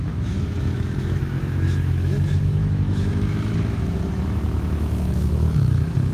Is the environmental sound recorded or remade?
remade